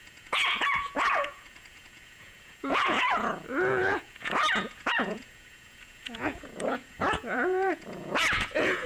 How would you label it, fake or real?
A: fake